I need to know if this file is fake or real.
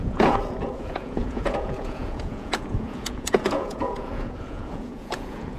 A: fake